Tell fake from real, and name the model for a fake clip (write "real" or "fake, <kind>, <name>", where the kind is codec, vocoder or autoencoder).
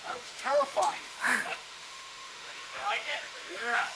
fake, autoencoder, DAC-VAE